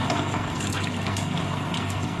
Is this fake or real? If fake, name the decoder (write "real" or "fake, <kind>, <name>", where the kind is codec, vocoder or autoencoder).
fake, codec, SNAC